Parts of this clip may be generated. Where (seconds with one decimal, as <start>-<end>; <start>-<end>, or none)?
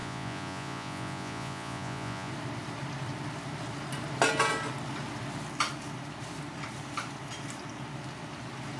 0.0-2.3